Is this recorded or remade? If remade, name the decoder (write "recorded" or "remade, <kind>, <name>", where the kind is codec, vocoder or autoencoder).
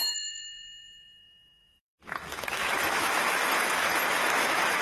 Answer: remade, autoencoder, DAC-VAE